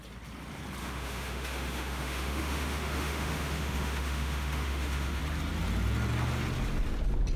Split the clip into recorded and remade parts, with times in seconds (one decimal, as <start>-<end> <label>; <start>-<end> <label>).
0.0-0.8 recorded; 0.8-5.2 remade; 5.2-7.4 recorded

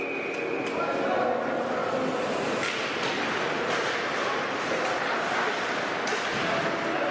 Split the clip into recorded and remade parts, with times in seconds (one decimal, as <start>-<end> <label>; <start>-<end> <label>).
0.0-7.1 recorded